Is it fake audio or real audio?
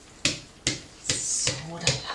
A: real